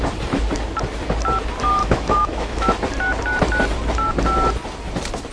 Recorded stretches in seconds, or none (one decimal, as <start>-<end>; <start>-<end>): 0.0-1.8; 2.7-5.3